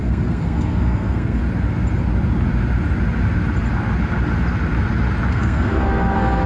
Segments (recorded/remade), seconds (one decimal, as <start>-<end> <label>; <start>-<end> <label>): 0.0-1.4 remade; 1.4-5.3 recorded; 5.3-6.5 remade